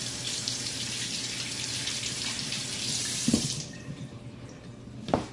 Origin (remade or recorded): remade